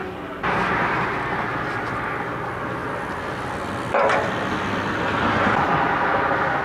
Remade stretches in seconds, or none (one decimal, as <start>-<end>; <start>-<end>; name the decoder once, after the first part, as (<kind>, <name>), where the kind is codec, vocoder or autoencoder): 0.0-1.1 (vocoder, BigVGAN v2)